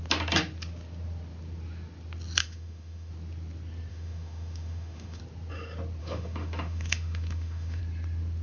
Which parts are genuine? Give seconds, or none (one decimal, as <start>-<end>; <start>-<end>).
0.0-2.4; 3.1-3.9; 5.2-6.0; 7.8-8.4